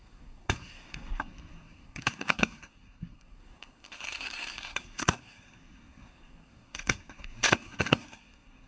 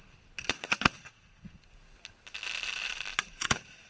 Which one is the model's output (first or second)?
first